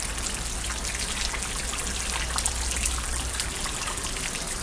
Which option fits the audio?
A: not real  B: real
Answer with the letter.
B